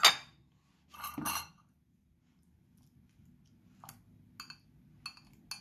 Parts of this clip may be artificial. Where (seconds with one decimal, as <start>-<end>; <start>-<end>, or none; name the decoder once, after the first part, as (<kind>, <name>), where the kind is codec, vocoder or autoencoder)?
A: none